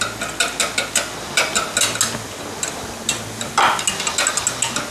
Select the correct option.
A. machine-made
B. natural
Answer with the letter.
B